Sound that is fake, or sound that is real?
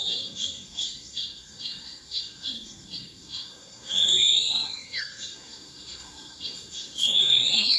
fake